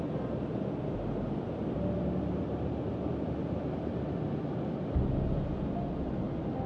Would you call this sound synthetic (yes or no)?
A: no